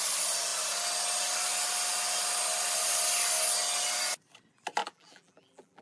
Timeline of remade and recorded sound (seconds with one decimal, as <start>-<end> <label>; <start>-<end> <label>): 0.0-4.8 recorded; 4.8-5.8 remade